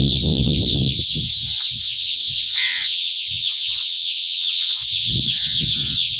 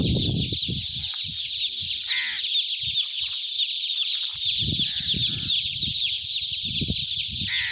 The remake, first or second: first